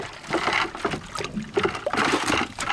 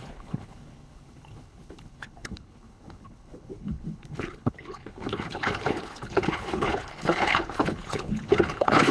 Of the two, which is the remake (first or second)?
second